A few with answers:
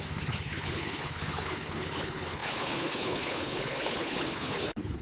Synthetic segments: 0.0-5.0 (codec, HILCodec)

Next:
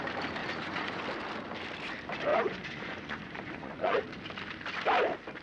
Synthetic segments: 0.4-1.0 (vocoder, Vocos); 2.3-4.0

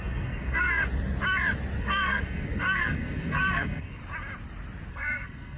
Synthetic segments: 0.0-0.8 (codec, SNAC); 1.8-4.0; 4.9-5.6